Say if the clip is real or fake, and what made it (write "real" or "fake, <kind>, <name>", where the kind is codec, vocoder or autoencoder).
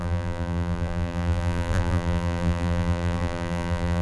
fake, vocoder, BigVGAN v2